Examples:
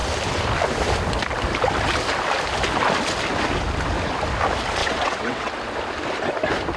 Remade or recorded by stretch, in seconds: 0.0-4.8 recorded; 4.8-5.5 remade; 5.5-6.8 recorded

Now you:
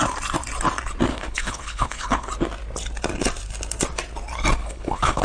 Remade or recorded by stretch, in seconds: 0.0-1.1 recorded; 1.1-2.3 remade; 2.3-4.6 recorded; 4.6-5.2 remade

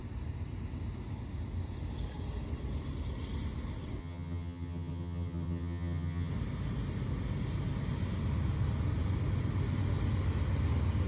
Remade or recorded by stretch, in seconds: 0.0-4.0 recorded; 4.0-6.3 remade; 6.3-11.1 recorded

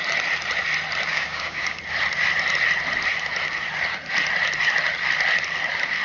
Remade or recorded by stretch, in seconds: 0.0-1.1 recorded; 1.1-1.8 remade; 1.8-6.0 recorded

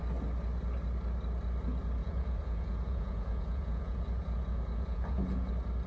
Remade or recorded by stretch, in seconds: 0.0-2.0 recorded; 2.0-5.5 remade; 5.5-5.9 recorded

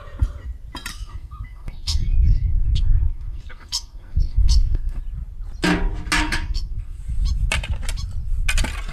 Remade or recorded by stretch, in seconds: 0.0-0.9 recorded; 0.9-5.0 remade; 5.0-6.2 recorded; 6.2-7.0 remade; 7.0-8.9 recorded

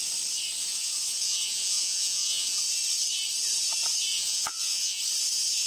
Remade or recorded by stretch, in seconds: 0.0-0.6 recorded; 0.6-2.6 remade; 2.6-4.1 recorded; 4.1-5.0 remade; 5.0-5.7 recorded